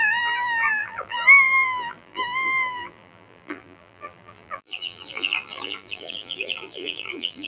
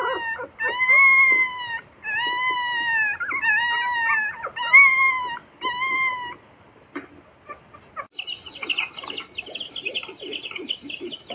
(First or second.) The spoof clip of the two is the first